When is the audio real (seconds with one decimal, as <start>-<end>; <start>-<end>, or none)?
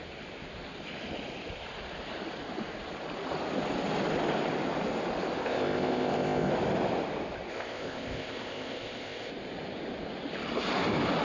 0.0-5.4; 6.5-7.5; 9.3-11.2